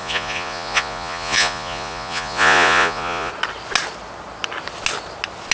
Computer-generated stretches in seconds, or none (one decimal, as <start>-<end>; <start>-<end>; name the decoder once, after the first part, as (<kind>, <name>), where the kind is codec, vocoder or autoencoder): 0.0-3.3 (vocoder, Vocos)